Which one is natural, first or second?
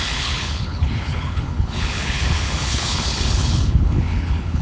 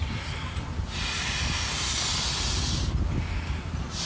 second